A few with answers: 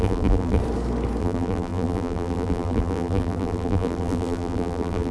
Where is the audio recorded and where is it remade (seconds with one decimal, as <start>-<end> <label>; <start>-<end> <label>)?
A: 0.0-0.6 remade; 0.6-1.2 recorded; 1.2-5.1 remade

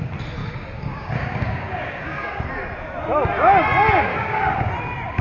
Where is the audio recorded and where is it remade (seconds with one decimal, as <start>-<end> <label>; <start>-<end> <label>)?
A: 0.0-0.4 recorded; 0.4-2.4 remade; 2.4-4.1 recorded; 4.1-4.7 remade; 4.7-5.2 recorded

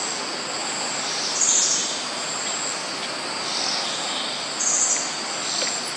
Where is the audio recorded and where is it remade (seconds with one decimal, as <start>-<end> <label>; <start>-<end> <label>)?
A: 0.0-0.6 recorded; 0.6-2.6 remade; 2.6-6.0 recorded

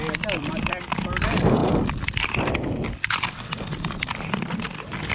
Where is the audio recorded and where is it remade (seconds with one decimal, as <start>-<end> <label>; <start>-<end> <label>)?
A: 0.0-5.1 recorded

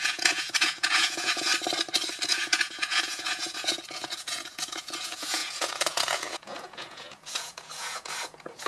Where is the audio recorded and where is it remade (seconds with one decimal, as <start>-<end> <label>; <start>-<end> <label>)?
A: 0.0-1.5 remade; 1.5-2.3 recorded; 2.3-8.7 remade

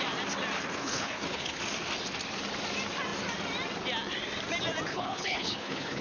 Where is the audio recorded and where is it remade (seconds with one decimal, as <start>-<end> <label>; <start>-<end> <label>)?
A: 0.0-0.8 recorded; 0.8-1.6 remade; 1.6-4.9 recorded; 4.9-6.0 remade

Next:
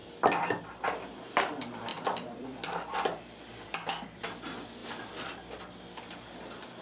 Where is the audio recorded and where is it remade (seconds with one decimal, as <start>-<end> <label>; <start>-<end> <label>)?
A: 0.0-1.9 recorded; 1.9-4.2 remade; 4.2-6.8 recorded

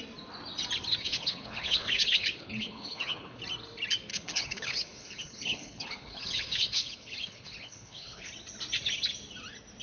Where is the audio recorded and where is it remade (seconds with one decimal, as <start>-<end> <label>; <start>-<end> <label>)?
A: 0.0-1.0 recorded; 1.0-3.4 remade; 3.4-4.1 recorded; 4.1-8.3 remade; 8.3-9.8 recorded